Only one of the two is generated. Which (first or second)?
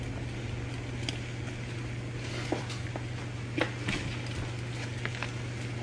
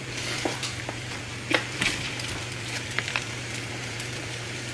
second